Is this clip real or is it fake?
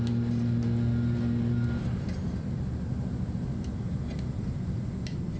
real